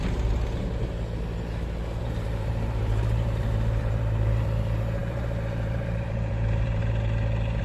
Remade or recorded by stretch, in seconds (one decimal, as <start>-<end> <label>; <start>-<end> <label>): 0.0-0.6 remade; 0.6-2.0 recorded; 2.0-6.8 remade; 6.8-7.6 recorded